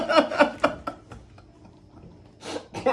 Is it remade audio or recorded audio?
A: recorded